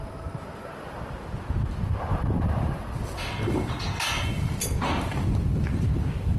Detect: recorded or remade recorded